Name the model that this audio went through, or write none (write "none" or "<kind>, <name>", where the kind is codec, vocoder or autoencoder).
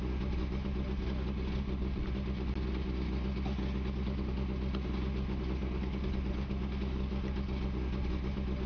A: none